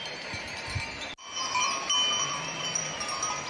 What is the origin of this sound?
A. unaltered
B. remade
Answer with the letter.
A